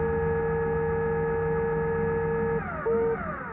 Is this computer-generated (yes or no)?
no